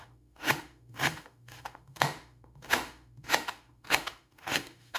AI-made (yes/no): yes